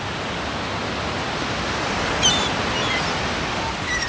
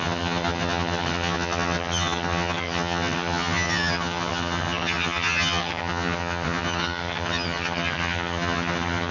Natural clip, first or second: first